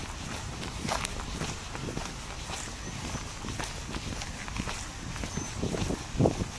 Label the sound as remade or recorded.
recorded